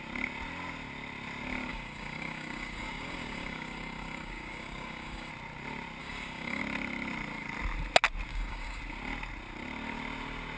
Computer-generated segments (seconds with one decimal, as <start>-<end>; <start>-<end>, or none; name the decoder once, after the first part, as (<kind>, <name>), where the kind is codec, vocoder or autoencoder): 1.7-5.3 (codec, DAC); 6.0-6.6; 8.3-8.8